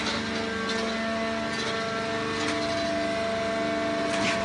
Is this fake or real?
real